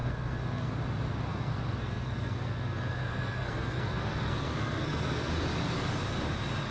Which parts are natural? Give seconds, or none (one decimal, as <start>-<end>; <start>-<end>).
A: 0.7-1.3; 5.3-6.7